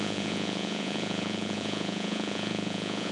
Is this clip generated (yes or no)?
yes